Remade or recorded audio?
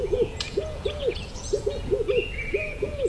remade